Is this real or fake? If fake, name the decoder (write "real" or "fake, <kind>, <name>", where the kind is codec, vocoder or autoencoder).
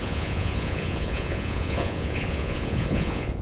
fake, vocoder, Vocos